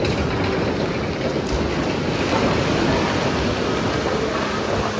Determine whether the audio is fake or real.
real